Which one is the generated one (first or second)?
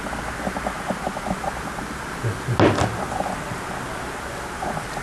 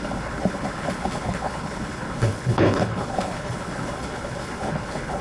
second